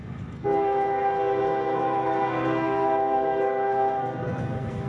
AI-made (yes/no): yes